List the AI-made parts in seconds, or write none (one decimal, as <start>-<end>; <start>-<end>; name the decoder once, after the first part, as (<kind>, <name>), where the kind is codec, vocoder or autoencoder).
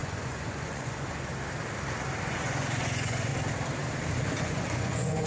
0.0-1.3 (vocoder, Vocos); 2.2-3.3; 4.4-5.3